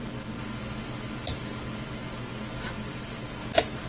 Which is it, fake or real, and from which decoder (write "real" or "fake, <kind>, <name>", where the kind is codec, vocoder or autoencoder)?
real